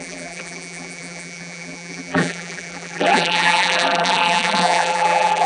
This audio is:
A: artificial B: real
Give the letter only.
A